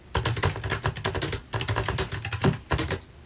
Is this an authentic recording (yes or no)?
yes